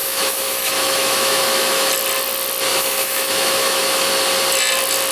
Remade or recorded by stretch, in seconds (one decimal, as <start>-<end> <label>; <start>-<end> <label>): 0.0-1.9 remade; 1.9-2.7 recorded; 2.7-4.1 remade; 4.1-5.1 recorded